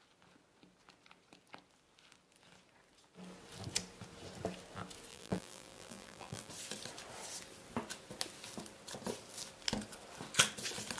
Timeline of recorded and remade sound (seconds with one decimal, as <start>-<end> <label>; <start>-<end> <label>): 0.0-5.1 recorded; 5.1-6.5 remade; 6.5-11.0 recorded